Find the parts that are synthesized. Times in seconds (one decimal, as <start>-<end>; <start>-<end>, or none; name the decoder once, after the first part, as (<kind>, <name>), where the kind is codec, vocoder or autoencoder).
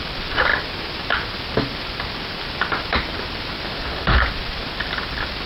0.0-0.5 (vocoder, BigVGAN v2); 3.8-5.5